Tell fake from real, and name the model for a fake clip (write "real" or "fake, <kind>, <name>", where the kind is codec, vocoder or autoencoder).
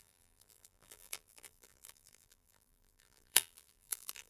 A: fake, vocoder, BigVGAN v2